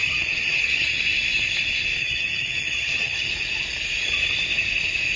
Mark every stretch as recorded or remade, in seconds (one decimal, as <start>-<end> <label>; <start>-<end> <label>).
0.0-1.0 remade; 1.0-2.0 recorded; 2.0-3.3 remade; 3.3-5.2 recorded